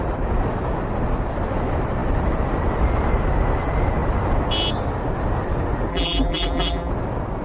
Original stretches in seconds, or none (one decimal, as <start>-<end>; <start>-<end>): 0.0-5.9; 6.9-7.4